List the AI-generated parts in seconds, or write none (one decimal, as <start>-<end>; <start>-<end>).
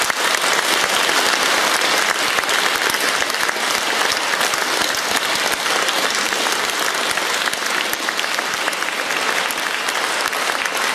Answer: none